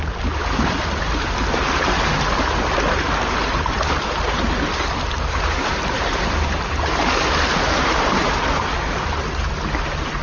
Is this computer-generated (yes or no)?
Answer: no